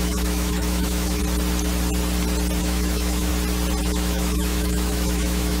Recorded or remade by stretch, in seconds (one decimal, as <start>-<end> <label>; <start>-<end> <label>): 0.0-1.2 remade; 1.2-2.6 recorded; 2.6-3.3 remade; 3.3-3.8 recorded; 3.8-5.6 remade